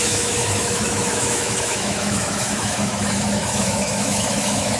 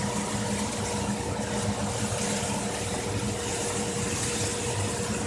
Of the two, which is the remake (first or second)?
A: first